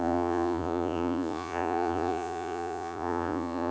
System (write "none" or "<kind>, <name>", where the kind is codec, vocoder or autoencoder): vocoder, Vocos